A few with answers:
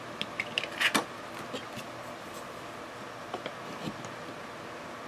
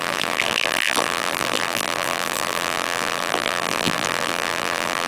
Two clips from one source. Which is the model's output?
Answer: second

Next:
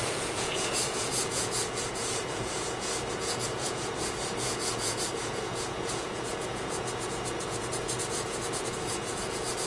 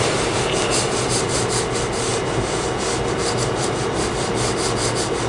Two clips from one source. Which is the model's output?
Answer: first